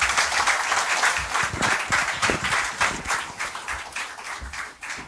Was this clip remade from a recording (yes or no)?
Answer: yes